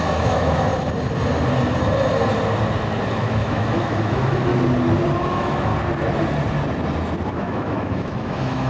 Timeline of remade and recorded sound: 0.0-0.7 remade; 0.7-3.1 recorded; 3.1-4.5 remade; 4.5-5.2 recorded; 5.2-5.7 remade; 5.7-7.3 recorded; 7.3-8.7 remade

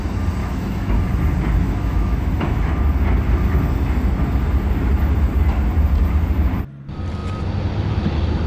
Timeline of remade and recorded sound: 0.0-0.4 recorded; 0.4-0.9 remade; 0.9-1.6 recorded; 1.6-2.7 remade; 2.7-8.5 recorded

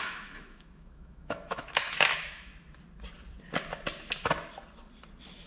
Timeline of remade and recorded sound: 0.0-2.5 remade; 2.5-5.5 recorded

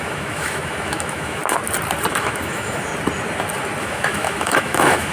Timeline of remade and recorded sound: 0.0-1.4 remade; 1.4-2.1 recorded; 2.1-2.9 remade; 2.9-3.8 recorded; 3.8-5.1 remade

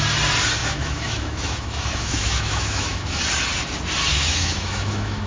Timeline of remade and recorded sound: 0.0-0.6 recorded; 0.6-3.2 remade; 3.2-4.1 recorded; 4.1-5.3 remade

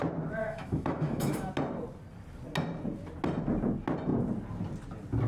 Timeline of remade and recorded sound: 0.0-0.4 recorded; 0.4-1.5 remade; 1.5-5.3 recorded

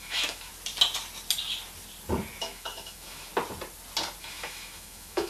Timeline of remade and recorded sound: 0.0-0.5 remade; 0.5-2.4 recorded; 2.4-3.3 remade; 3.3-4.2 recorded; 4.2-5.3 remade

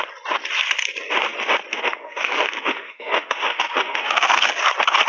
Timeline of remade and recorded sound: 0.0-1.7 recorded; 1.7-4.5 remade; 4.5-5.1 recorded